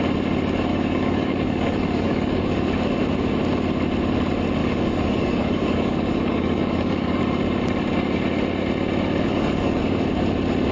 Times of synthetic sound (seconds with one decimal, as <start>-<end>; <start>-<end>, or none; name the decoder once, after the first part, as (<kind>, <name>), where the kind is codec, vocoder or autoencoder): 0.7-2.5 (codec, DAC); 4.6-7.2; 9.3-9.8